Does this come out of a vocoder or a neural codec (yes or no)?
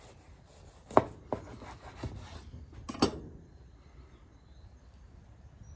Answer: no